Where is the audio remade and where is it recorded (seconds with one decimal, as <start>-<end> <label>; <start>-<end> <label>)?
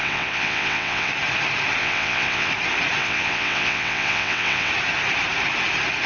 0.0-1.1 remade; 1.1-1.8 recorded; 1.8-2.5 remade; 2.5-3.0 recorded; 3.0-4.7 remade; 4.7-6.1 recorded